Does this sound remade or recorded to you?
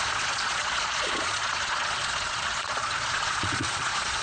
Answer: remade